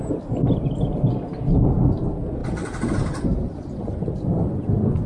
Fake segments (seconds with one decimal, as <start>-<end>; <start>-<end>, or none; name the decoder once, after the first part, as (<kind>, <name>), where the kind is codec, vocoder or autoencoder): 2.4-5.1 (vocoder, BigVGAN v2)